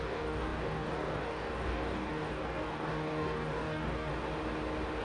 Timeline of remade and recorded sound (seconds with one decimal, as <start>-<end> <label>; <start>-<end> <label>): 0.0-4.1 remade; 4.1-5.0 recorded